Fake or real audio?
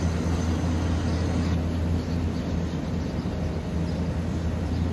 real